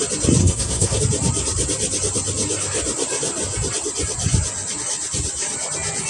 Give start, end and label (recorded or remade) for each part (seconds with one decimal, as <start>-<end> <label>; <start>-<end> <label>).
0.0-0.4 recorded; 0.4-1.0 remade; 1.0-6.1 recorded